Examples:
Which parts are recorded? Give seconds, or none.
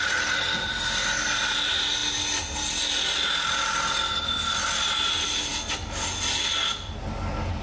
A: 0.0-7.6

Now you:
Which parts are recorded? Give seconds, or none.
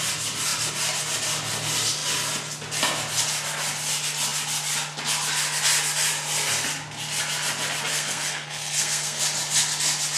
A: 0.0-7.9; 9.2-10.2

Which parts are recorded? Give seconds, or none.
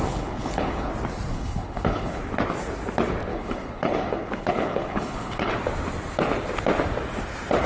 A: 0.9-1.3; 2.2-3.3; 5.5-7.7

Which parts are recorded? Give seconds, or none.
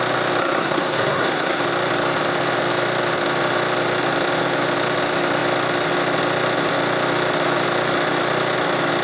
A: 0.0-0.4; 1.6-9.0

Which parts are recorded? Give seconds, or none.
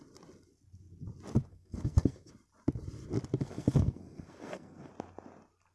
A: 0.0-1.5; 2.3-3.4; 4.9-5.7